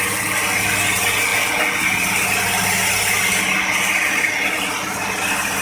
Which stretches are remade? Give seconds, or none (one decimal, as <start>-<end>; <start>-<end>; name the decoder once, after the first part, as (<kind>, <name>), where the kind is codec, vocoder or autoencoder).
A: none